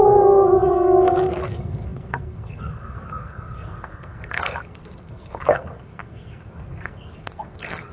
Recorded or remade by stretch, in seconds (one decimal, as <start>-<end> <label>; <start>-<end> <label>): 0.0-7.9 remade